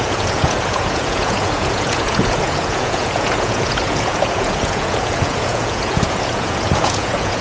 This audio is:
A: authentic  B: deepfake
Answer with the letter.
B